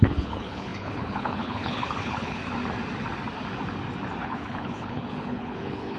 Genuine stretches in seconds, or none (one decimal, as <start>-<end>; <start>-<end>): 2.4-4.2